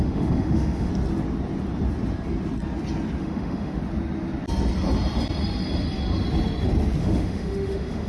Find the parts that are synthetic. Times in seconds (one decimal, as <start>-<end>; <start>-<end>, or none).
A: 0.0-0.9; 3.2-3.8; 7.0-8.1